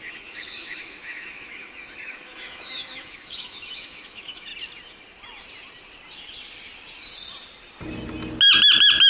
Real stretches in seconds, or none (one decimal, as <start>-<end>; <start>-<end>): 4.5-9.1